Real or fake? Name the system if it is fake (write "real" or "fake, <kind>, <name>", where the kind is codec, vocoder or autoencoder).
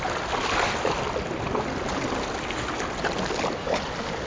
real